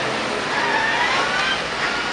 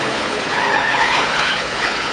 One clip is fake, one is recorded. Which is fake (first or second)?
second